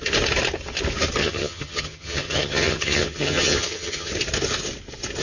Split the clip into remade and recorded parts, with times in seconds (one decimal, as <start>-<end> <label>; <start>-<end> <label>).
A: 0.0-1.2 recorded; 1.2-4.1 remade; 4.1-5.2 recorded